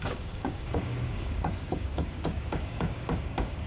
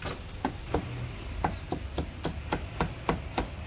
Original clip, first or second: second